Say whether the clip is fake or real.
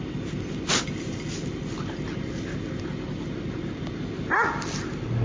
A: real